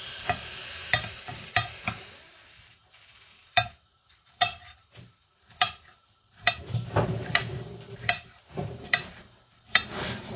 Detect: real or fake fake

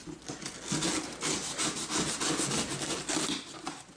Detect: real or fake real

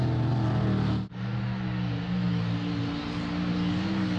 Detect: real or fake real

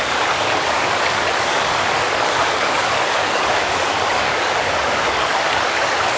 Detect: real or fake fake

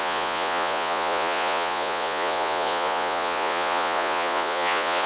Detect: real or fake fake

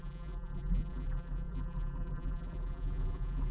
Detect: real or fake fake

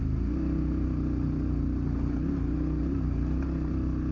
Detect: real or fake real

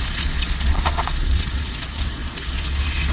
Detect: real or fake fake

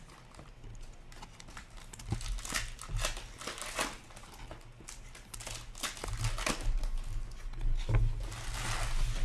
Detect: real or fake real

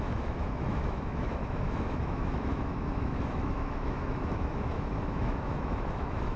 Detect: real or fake fake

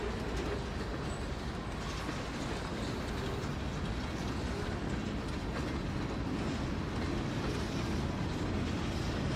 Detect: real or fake real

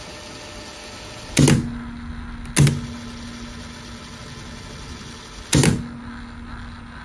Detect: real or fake real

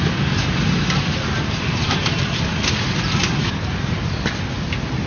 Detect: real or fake real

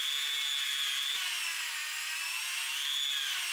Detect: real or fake real